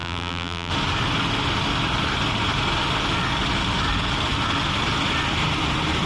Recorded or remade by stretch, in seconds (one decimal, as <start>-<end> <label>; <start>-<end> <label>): 0.0-0.7 remade; 0.7-6.1 recorded

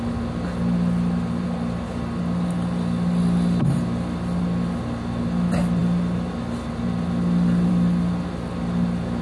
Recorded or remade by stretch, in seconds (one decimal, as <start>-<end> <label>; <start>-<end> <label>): 0.0-9.2 recorded

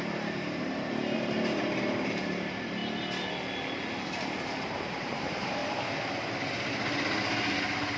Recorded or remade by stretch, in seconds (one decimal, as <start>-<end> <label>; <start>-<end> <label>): 0.0-2.8 remade; 2.8-5.0 recorded; 5.0-5.6 remade; 5.6-8.0 recorded

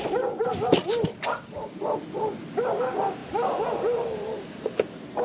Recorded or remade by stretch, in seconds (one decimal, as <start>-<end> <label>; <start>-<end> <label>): 0.0-0.8 recorded; 0.8-1.5 remade; 1.5-3.2 recorded; 3.2-5.2 remade

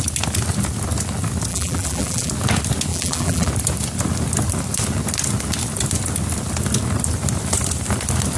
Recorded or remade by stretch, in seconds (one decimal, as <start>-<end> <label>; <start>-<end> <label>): 0.0-1.5 recorded; 1.5-2.3 remade; 2.3-2.9 recorded; 2.9-3.5 remade; 3.5-8.4 recorded

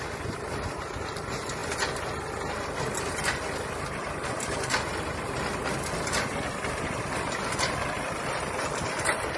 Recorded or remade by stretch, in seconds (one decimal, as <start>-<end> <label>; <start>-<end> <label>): 0.0-9.4 recorded

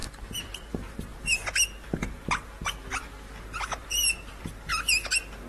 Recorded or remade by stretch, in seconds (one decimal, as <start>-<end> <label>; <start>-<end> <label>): 0.0-0.7 remade; 0.7-3.8 recorded; 3.8-4.5 remade; 4.5-5.5 recorded

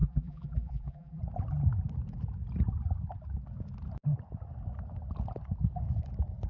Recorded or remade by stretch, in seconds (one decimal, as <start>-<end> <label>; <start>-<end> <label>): 0.0-1.2 remade; 1.2-6.5 recorded